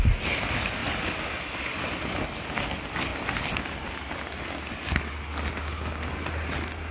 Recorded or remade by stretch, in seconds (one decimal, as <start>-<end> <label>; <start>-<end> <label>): 0.0-6.9 recorded